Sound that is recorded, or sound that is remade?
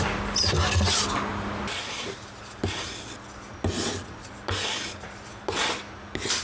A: recorded